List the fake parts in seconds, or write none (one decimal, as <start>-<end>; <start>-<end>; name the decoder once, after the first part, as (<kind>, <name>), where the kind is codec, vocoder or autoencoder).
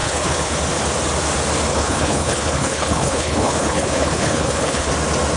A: 0.0-0.5 (codec, HILCodec); 1.7-4.9